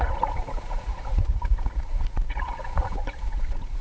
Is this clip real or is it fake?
fake